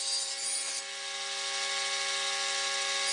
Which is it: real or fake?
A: real